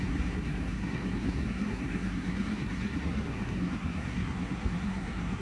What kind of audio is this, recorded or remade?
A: remade